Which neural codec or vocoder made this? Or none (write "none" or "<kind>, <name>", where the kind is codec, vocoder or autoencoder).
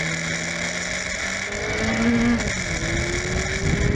none